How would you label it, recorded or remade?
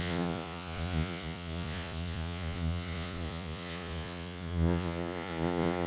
remade